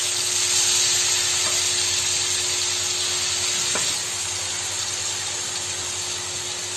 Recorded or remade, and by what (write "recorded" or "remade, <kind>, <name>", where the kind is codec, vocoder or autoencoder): recorded